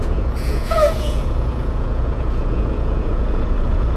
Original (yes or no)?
no